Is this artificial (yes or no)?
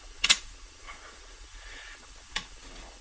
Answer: yes